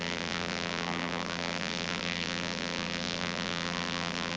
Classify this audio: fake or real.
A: fake